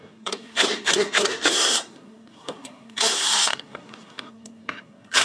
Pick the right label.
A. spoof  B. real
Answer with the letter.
A